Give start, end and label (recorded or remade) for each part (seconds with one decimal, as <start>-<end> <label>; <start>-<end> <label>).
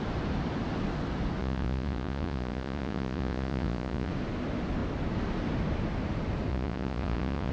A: 0.0-1.4 recorded; 1.4-4.1 remade; 4.1-6.5 recorded; 6.5-7.5 remade